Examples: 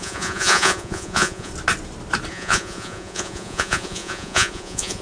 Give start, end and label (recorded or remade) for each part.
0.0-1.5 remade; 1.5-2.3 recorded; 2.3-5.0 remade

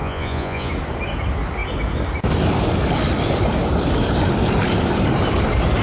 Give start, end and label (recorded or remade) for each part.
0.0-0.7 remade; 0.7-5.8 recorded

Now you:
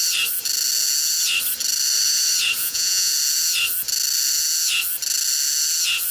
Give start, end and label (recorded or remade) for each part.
0.0-2.6 recorded; 2.6-3.1 remade; 3.1-6.1 recorded

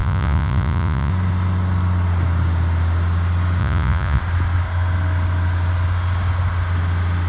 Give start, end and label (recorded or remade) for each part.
0.0-1.1 remade; 1.1-3.6 recorded; 3.6-4.2 remade; 4.2-7.3 recorded

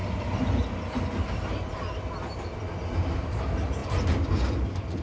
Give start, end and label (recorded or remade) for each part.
0.0-5.0 recorded

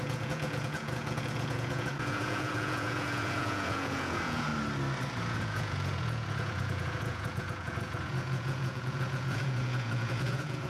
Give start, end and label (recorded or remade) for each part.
0.0-4.5 remade; 4.5-5.2 recorded; 5.2-10.7 remade

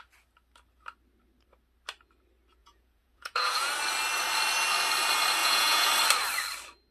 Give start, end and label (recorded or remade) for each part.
0.0-2.6 recorded; 2.6-3.7 remade; 3.7-5.4 recorded; 5.4-5.9 remade; 5.9-6.9 recorded